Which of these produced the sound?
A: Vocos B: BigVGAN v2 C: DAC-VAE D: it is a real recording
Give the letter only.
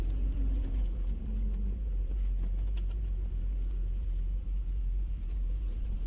B